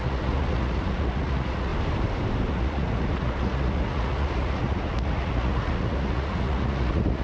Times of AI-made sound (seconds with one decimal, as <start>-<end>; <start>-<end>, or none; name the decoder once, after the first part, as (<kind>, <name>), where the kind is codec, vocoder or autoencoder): 0.0-1.7 (vocoder, Vocos); 2.5-7.2